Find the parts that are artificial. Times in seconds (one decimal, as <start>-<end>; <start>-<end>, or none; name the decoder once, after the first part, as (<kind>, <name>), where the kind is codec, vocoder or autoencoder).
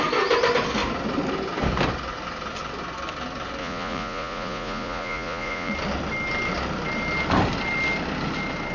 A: 3.6-5.7 (vocoder, Vocos)